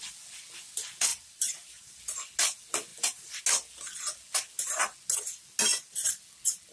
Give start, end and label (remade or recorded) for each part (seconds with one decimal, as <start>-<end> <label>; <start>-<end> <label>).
0.0-1.1 recorded; 1.1-2.0 remade; 2.0-2.9 recorded; 2.9-3.4 remade; 3.4-5.7 recorded; 5.7-6.2 remade; 6.2-6.7 recorded